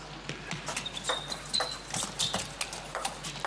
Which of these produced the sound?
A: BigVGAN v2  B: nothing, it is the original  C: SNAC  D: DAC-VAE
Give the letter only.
B